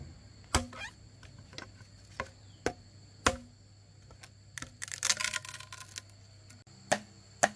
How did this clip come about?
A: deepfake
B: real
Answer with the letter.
B